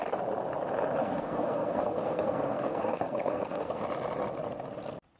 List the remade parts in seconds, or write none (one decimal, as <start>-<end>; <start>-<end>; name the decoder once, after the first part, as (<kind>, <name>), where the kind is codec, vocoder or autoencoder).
1.0-3.8 (codec, SNAC)